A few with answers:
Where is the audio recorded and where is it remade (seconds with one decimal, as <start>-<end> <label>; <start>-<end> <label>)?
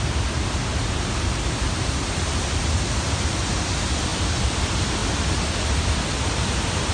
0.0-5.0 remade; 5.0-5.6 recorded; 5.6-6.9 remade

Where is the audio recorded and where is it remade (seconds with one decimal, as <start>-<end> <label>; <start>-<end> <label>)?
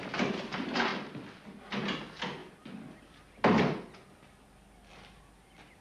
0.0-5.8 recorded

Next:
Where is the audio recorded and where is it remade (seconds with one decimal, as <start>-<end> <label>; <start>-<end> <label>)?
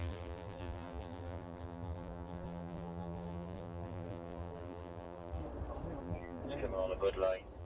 0.0-5.4 remade; 5.4-6.0 recorded; 6.0-6.4 remade; 6.4-7.6 recorded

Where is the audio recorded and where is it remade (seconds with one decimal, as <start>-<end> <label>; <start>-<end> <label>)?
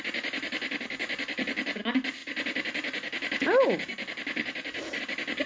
0.0-5.5 recorded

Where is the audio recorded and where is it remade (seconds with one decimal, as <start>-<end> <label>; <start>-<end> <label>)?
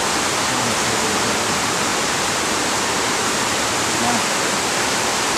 0.0-1.9 recorded; 1.9-5.4 remade